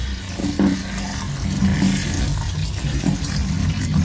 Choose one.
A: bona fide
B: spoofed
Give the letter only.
A